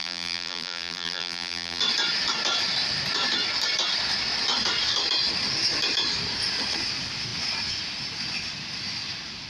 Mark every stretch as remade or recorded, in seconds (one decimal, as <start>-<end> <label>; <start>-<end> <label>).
0.0-1.8 remade; 1.8-9.5 recorded